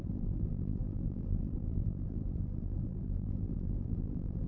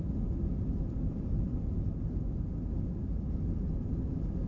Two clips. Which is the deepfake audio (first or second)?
first